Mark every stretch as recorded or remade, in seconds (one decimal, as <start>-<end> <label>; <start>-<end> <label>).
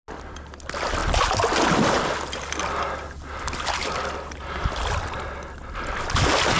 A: 0.0-6.6 recorded